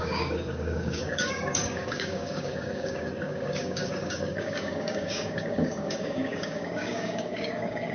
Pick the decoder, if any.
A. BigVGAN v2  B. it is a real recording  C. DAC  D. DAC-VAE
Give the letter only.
C